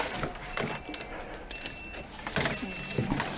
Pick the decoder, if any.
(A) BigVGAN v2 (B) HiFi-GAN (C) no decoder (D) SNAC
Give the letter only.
C